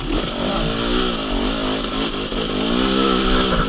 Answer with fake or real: real